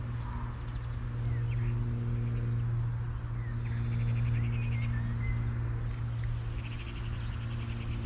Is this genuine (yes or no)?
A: yes